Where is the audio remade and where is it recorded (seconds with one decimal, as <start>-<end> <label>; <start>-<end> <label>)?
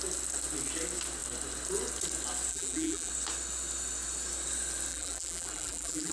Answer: 0.0-2.5 recorded; 2.5-3.1 remade; 3.1-4.9 recorded; 4.9-6.1 remade